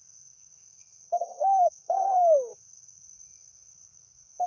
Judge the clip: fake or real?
fake